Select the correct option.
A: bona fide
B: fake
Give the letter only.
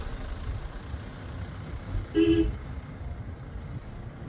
A